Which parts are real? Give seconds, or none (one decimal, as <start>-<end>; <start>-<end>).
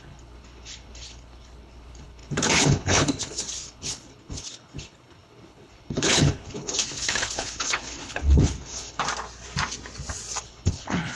9.0-10.4